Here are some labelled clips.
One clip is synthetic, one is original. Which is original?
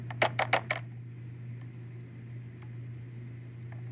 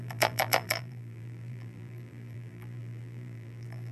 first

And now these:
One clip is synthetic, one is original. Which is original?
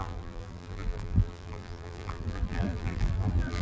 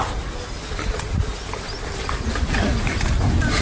second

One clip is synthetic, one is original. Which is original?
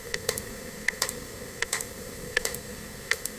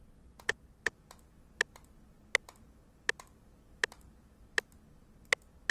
second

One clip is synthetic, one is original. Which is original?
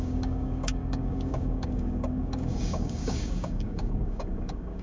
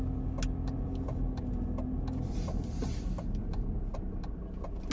second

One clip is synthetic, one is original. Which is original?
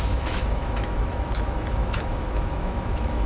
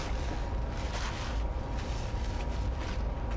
second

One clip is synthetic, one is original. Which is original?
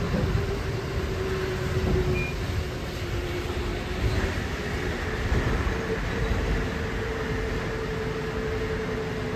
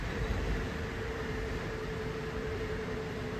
first